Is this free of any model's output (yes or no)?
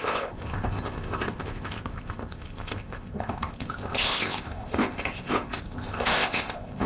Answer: no